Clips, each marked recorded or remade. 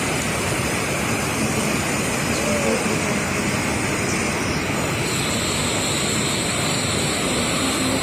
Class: recorded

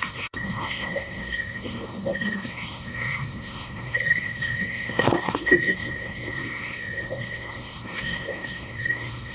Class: remade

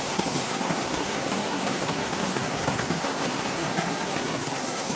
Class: remade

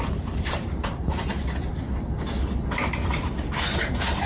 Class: recorded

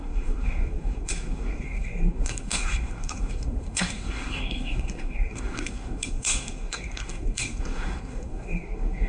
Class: remade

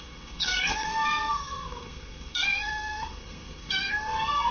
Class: remade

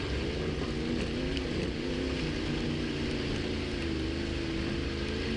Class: recorded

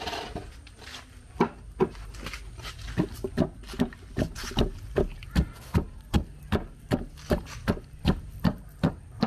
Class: recorded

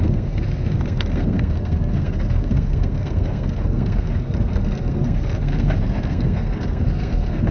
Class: remade